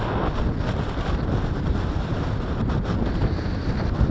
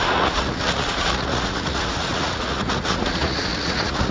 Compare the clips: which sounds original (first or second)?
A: first